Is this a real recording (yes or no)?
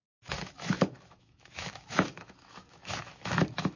no